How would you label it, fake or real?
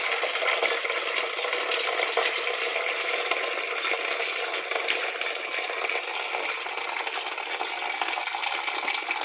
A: real